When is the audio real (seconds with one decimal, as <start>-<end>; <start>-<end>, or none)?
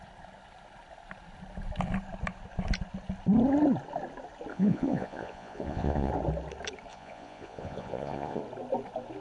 0.0-4.5; 6.1-6.9; 8.4-9.2